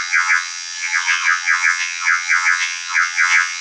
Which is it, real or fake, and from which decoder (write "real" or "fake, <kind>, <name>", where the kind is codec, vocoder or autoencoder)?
fake, vocoder, WaveNeXt